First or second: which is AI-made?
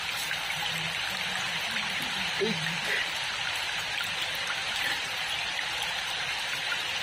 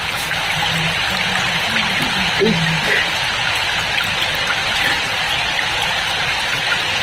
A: first